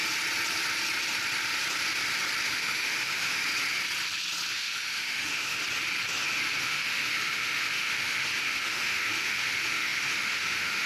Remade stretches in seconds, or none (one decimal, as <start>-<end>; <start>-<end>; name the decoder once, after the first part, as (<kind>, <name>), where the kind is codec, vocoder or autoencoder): 2.5-3.4 (autoencoder, DAC-VAE); 4.5-5.6; 6.6-10.9